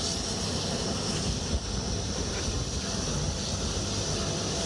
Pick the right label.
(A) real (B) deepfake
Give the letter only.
A